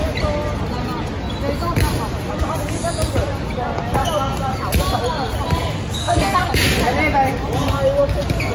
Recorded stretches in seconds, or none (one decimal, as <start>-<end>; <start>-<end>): 0.0-6.0; 6.5-8.5